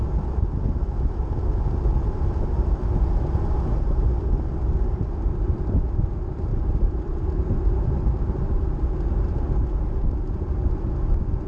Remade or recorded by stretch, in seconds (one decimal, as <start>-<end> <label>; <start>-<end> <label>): 0.0-11.5 recorded